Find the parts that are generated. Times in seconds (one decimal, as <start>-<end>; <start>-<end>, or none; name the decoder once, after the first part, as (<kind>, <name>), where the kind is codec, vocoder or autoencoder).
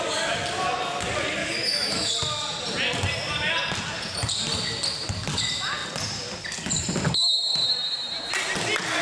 1.4-2.1 (autoencoder, DAC-VAE)